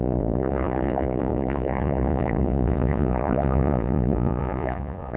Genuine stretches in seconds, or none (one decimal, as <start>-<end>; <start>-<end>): none